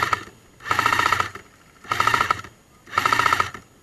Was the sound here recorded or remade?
remade